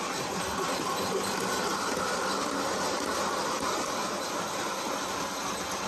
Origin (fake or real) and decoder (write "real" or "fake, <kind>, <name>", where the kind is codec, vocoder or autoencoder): real